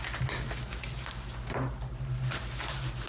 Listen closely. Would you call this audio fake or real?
real